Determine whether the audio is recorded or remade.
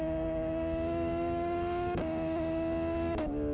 remade